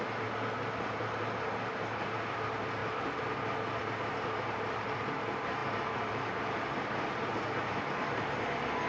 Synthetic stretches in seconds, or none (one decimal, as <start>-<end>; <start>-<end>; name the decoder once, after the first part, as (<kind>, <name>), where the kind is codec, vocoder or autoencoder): none